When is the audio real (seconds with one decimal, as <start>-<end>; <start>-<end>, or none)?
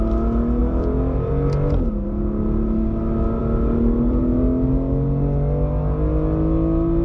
0.0-0.6; 1.3-3.4; 4.2-7.0